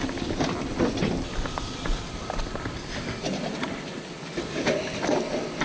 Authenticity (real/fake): real